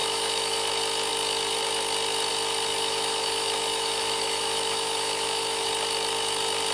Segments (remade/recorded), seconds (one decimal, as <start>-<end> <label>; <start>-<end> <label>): 0.0-0.7 remade; 0.7-2.7 recorded; 2.7-5.7 remade; 5.7-6.7 recorded